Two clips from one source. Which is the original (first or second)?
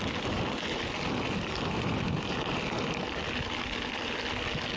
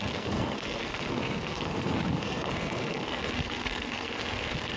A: first